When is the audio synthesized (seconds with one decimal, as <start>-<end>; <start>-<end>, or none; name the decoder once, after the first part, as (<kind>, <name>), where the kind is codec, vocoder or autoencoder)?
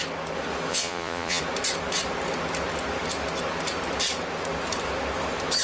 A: 0.7-1.4 (vocoder, Vocos)